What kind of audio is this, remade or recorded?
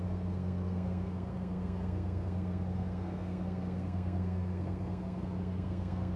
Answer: remade